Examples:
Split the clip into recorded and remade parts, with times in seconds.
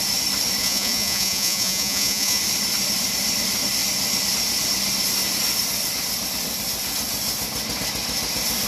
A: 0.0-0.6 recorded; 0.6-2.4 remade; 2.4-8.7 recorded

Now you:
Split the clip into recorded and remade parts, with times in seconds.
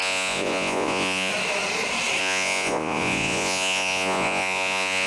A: 0.0-1.3 remade; 1.3-2.2 recorded; 2.2-5.1 remade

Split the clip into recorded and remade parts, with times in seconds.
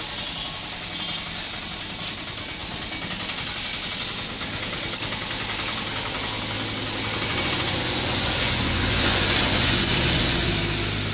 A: 0.0-7.3 recorded; 7.3-10.5 remade; 10.5-11.1 recorded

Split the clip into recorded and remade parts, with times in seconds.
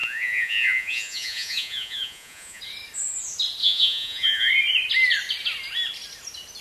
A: 0.0-2.6 remade; 2.6-3.6 recorded; 3.6-4.5 remade; 4.5-6.6 recorded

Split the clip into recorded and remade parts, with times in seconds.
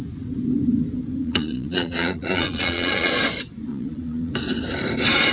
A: 0.0-1.2 recorded; 1.2-3.1 remade; 3.1-3.7 recorded; 3.7-4.3 remade; 4.3-5.3 recorded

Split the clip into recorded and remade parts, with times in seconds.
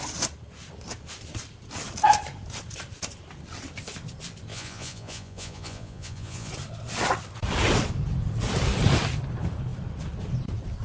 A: 0.0-4.5 recorded; 4.5-6.5 remade; 6.5-10.8 recorded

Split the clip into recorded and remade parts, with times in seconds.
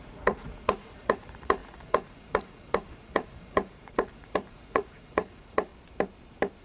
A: 0.0-5.7 remade; 5.7-6.6 recorded